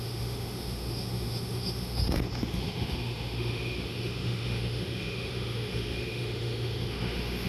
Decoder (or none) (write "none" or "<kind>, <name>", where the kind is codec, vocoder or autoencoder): autoencoder, DAC-VAE